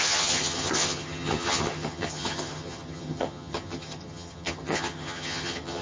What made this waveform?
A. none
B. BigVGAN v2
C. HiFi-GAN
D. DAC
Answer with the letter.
C